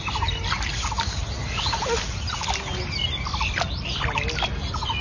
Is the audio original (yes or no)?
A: yes